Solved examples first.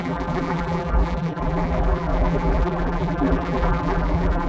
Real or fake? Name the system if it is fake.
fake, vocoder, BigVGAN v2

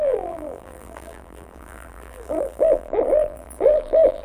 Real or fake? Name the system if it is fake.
fake, vocoder, BigVGAN v2